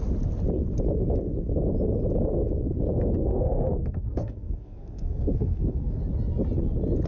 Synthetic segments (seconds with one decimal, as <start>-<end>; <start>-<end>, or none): 3.2-6.0